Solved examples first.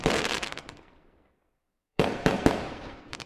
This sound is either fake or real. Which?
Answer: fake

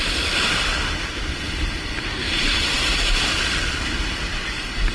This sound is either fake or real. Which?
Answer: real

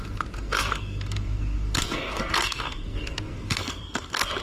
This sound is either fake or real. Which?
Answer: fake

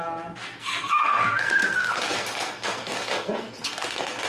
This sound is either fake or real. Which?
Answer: fake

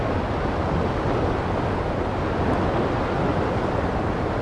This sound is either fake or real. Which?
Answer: real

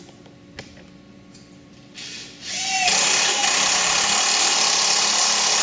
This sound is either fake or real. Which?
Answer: real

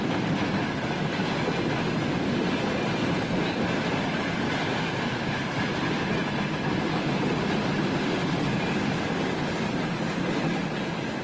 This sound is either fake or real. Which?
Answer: real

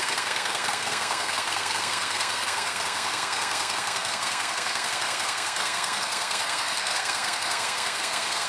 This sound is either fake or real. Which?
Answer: fake